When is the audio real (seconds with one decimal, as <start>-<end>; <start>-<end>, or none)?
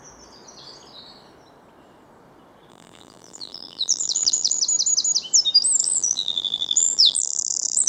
0.0-2.7; 4.6-5.8